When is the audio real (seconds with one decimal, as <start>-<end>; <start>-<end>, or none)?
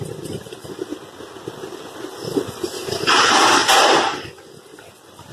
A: 0.0-5.3